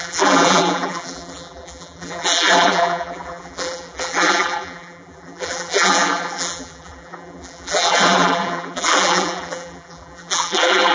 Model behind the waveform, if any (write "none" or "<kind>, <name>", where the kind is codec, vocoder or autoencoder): vocoder, BigVGAN v2